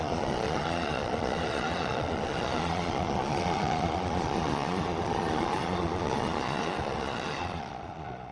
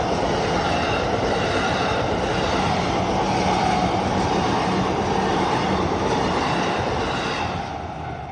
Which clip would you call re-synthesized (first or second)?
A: first